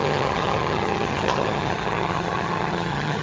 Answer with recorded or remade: remade